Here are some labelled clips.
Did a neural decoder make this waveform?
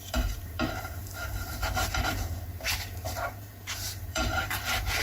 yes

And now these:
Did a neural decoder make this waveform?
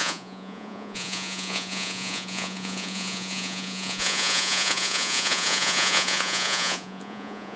yes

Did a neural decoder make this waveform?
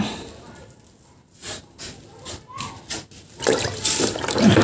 no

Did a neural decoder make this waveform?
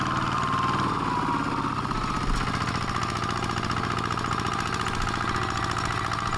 no